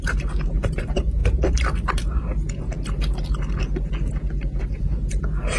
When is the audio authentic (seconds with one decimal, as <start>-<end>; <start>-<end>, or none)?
1.2-4.6